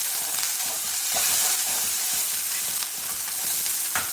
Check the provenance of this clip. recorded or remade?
remade